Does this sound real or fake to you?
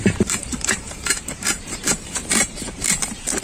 fake